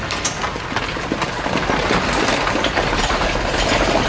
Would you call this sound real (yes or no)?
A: yes